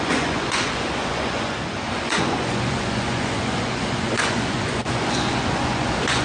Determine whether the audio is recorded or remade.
remade